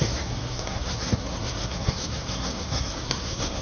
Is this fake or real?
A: fake